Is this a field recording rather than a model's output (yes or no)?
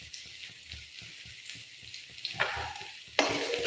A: yes